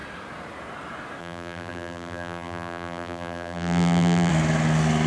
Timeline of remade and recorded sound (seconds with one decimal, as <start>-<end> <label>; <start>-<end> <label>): 0.0-1.2 recorded; 1.2-4.3 remade; 4.3-5.1 recorded